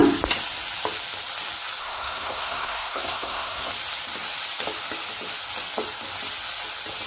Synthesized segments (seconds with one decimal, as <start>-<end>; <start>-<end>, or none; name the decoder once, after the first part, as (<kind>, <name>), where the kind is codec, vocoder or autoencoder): 1.8-3.7 (codec, SNAC)